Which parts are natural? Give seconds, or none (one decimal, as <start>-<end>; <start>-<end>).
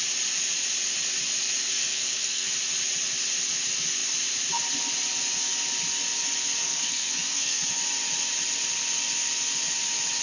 0.0-1.7; 2.5-6.6; 7.8-10.2